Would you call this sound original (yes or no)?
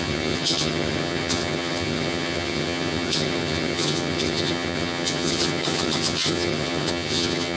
no